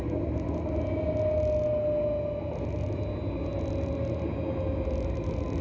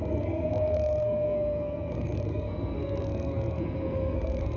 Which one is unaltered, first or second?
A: first